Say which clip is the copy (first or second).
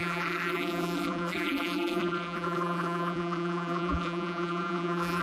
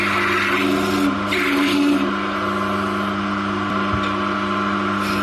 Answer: first